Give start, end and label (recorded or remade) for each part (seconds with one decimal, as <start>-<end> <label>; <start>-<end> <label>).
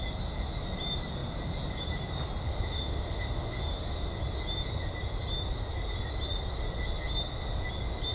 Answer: 0.0-2.5 recorded; 2.5-4.1 remade; 4.1-8.1 recorded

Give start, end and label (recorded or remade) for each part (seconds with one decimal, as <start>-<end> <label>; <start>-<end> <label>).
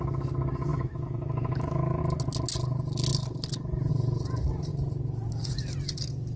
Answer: 0.0-0.7 recorded; 0.7-2.0 remade; 2.0-6.4 recorded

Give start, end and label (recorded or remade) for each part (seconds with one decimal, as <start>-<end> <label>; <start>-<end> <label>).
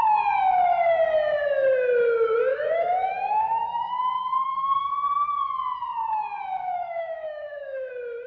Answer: 0.0-2.5 recorded; 2.5-4.9 remade; 4.9-6.6 recorded; 6.6-7.9 remade; 7.9-8.3 recorded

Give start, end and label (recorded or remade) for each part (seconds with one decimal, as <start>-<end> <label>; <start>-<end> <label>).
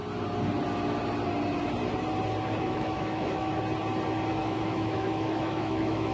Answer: 0.0-2.6 recorded; 2.6-3.5 remade; 3.5-4.3 recorded; 4.3-6.1 remade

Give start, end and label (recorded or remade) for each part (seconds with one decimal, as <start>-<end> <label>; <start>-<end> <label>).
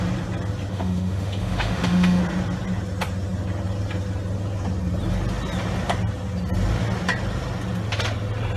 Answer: 0.0-0.7 recorded; 0.7-2.2 remade; 2.2-8.6 recorded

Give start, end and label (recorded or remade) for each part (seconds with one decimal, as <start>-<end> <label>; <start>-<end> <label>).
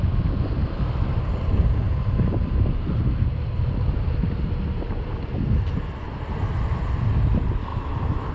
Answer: 0.0-7.7 recorded; 7.7-8.3 remade